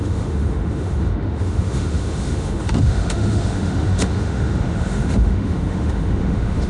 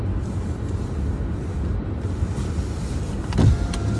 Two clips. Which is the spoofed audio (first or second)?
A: first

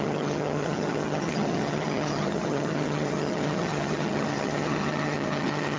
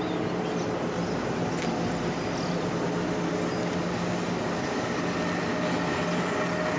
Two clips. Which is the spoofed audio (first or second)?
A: first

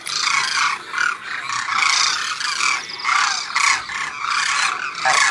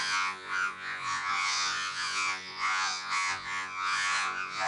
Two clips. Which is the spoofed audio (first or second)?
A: second